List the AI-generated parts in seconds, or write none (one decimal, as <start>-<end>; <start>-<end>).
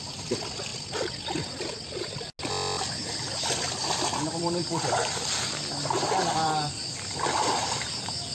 3.0-6.7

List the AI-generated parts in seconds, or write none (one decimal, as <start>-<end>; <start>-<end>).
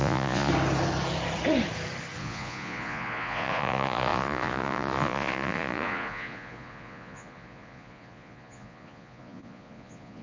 0.0-0.5; 2.2-10.2